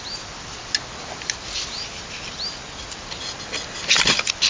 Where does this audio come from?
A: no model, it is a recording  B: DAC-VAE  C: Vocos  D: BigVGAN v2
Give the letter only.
A